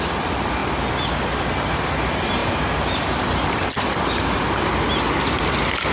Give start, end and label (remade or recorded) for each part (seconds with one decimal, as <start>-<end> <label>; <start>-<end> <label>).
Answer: 0.0-5.9 recorded